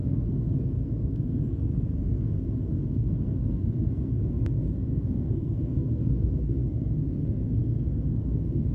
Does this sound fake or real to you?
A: fake